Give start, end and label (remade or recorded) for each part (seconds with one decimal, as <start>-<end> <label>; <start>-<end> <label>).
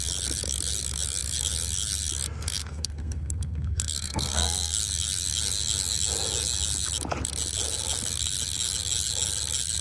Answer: 0.0-2.6 recorded; 2.6-4.8 remade; 4.8-9.8 recorded